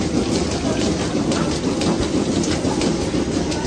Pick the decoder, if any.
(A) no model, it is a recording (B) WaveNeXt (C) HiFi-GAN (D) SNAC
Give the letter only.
A